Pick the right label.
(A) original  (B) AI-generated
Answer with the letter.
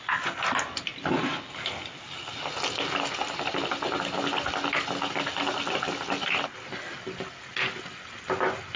A